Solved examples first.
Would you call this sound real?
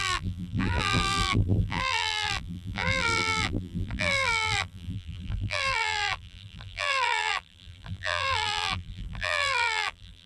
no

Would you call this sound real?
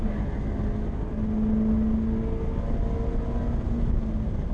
yes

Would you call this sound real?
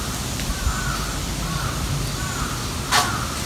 yes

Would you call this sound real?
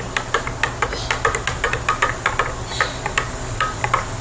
yes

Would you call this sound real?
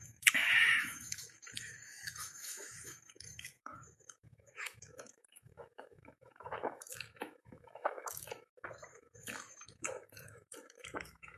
no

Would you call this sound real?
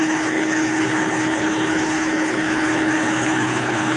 no